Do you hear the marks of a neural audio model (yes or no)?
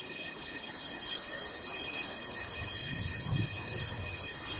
yes